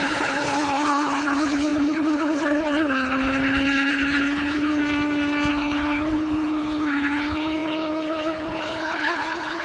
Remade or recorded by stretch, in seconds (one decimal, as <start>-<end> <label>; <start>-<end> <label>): 0.0-4.8 remade; 4.8-5.5 recorded; 5.5-9.6 remade